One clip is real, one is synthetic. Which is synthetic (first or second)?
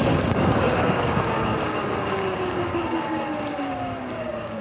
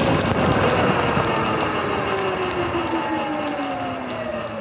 first